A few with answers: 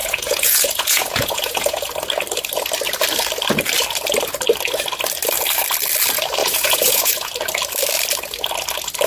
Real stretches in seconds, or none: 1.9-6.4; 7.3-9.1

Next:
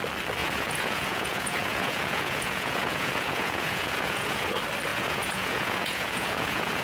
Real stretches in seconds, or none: 0.0-0.4; 4.5-4.9

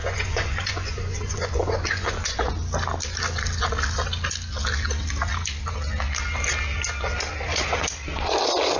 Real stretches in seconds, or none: 2.5-8.8

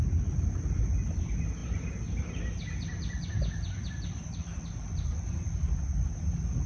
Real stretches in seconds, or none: 0.0-6.7

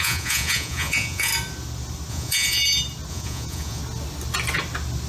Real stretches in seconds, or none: 1.3-2.1; 2.6-3.1; 3.8-5.1

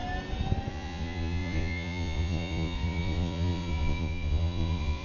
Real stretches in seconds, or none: 0.0-0.7

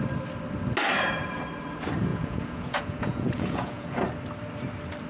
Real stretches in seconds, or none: 0.0-2.1; 4.0-5.1